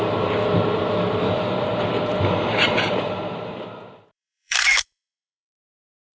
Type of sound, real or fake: fake